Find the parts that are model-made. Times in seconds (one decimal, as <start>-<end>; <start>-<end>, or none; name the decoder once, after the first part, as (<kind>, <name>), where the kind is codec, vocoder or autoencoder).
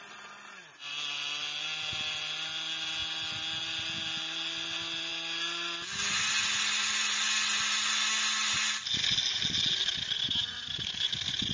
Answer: none